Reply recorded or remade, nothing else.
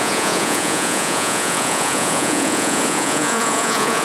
remade